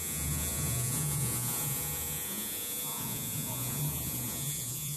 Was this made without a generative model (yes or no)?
no